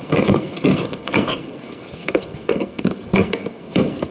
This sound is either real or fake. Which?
fake